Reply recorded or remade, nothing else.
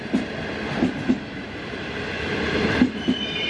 recorded